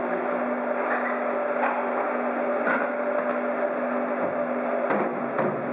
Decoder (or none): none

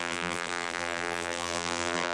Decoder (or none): vocoder, BigVGAN v2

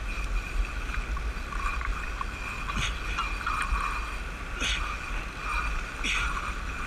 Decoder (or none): none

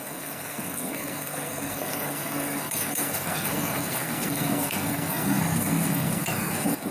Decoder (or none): codec, SNAC